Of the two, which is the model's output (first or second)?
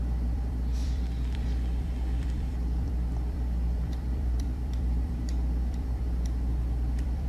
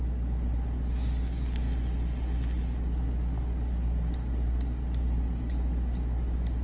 first